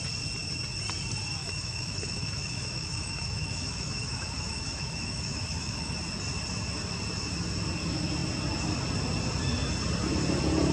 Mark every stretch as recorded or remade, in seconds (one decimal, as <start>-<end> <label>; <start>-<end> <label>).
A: 0.0-1.4 recorded; 1.4-5.9 remade; 5.9-10.7 recorded